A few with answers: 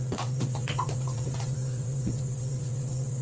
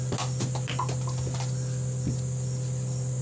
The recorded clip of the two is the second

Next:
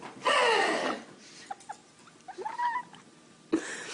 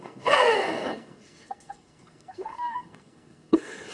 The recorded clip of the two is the first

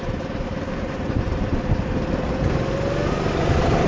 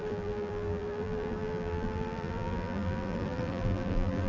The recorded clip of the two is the first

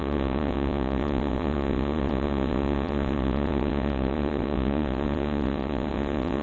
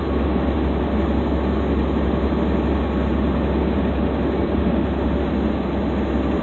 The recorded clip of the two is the second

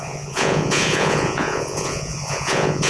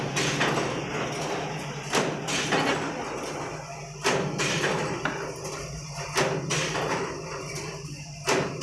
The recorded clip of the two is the second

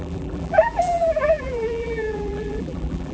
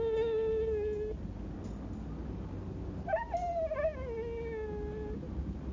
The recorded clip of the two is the second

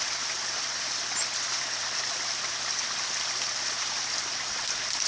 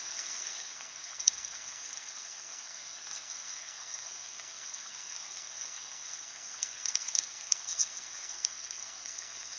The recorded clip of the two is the first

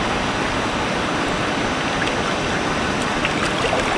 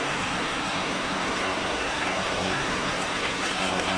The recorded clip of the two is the first